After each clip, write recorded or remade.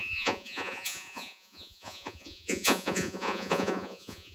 remade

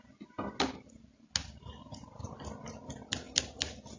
recorded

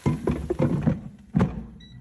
recorded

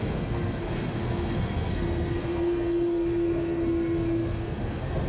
remade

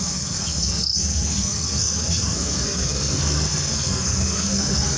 remade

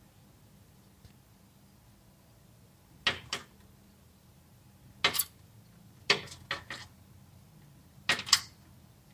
recorded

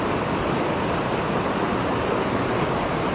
recorded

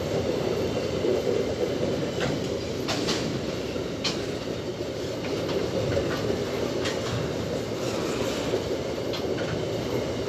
recorded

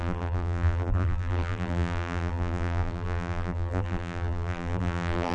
remade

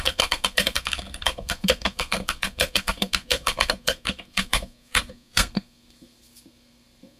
remade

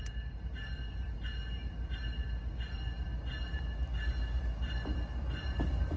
recorded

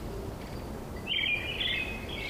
recorded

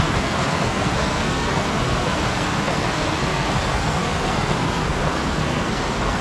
remade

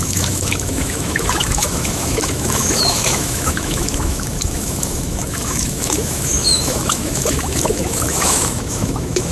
remade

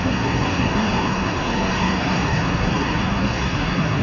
remade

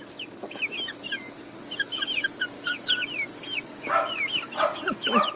recorded